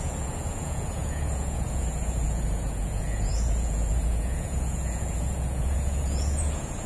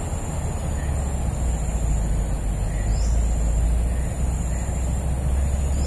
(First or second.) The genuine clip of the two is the second